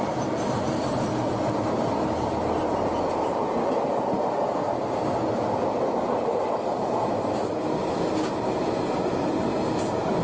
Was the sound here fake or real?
real